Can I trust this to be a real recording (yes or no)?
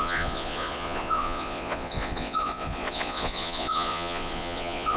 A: no